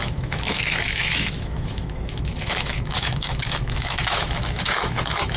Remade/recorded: remade